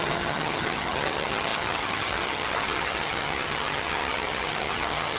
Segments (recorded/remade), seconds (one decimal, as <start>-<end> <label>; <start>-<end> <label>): 0.0-5.2 remade

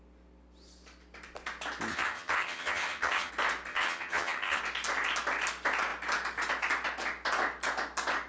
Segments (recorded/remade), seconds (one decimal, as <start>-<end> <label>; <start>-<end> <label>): 0.0-1.9 recorded; 1.9-3.3 remade; 3.3-3.7 recorded; 3.7-4.6 remade; 4.6-8.3 recorded